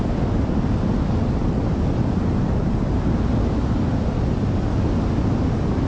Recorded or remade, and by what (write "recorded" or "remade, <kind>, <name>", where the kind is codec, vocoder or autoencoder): recorded